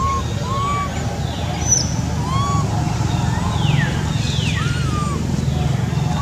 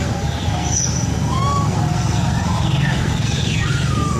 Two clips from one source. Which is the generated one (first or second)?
second